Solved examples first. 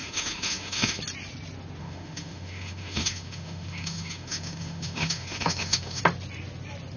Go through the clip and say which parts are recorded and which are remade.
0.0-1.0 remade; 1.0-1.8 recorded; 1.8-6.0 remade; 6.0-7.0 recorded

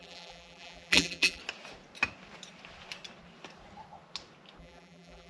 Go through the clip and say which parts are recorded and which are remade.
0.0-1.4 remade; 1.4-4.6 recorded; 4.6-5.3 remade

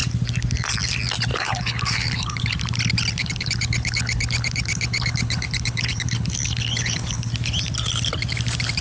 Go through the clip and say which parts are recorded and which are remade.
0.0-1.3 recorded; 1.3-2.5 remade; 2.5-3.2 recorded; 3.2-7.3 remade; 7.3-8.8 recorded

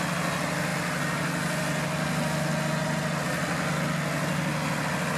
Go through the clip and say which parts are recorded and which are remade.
0.0-5.2 recorded

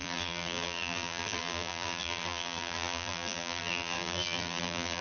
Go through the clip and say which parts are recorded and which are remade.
0.0-5.0 remade

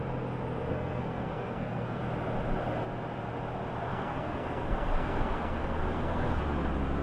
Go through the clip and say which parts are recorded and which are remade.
0.0-0.7 recorded; 0.7-2.0 remade; 2.0-3.9 recorded; 3.9-6.4 remade; 6.4-7.0 recorded

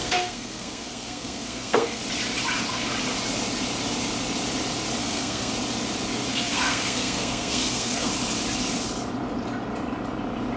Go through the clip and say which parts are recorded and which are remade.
0.0-2.0 remade; 2.0-5.0 recorded; 5.0-5.5 remade; 5.5-6.3 recorded; 6.3-8.1 remade; 8.1-10.6 recorded